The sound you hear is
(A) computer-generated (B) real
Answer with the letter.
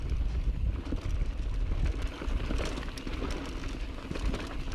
B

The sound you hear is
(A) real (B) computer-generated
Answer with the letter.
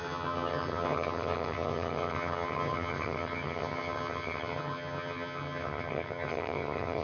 B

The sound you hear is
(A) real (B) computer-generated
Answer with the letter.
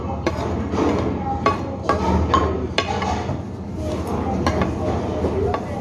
A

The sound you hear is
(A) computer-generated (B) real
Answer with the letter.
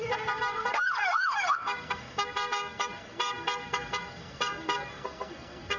A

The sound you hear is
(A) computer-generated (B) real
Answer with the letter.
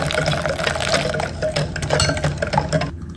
B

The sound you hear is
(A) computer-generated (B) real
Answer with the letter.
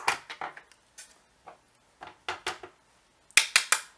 B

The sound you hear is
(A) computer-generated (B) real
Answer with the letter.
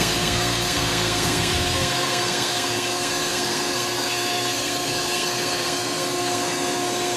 A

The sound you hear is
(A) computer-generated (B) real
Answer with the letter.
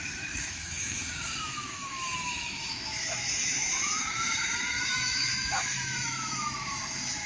A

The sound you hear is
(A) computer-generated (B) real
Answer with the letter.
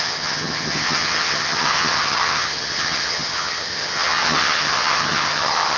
A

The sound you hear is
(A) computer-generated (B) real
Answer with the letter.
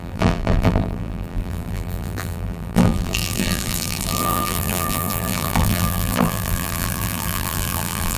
A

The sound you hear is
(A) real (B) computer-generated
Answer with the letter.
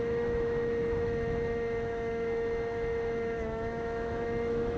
B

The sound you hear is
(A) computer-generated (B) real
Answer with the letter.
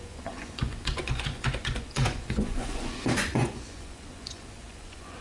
A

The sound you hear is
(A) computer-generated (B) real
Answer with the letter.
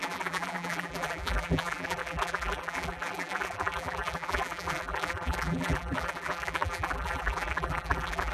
A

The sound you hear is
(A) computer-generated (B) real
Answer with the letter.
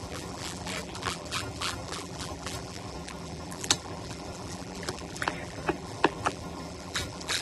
A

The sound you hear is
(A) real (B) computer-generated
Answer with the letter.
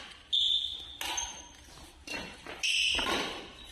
A